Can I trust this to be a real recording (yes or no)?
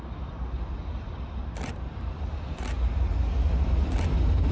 yes